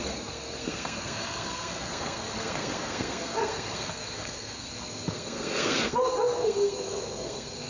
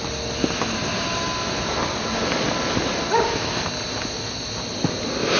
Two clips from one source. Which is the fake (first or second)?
first